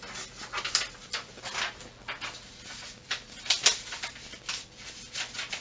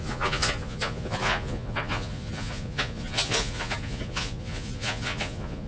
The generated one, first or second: second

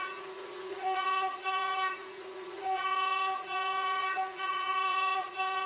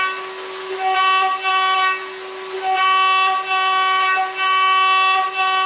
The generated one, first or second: first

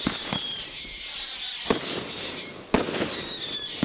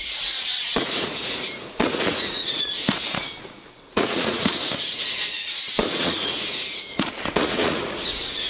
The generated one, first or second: second